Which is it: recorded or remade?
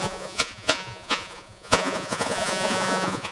remade